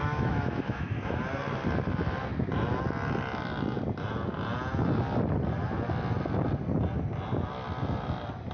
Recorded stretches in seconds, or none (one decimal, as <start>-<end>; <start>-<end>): 1.2-8.5